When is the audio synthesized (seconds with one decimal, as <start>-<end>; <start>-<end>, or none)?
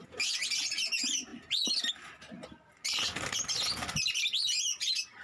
none